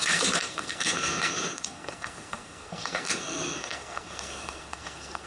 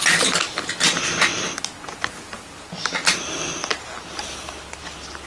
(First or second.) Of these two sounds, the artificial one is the first